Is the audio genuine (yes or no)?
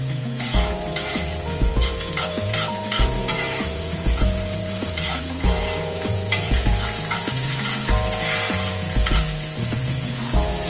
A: no